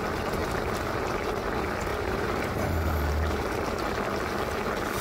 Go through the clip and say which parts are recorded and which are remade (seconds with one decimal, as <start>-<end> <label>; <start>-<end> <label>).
0.0-1.9 recorded; 1.9-2.8 remade; 2.8-5.0 recorded